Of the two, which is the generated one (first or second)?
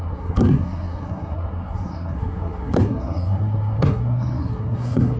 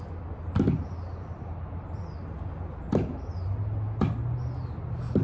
first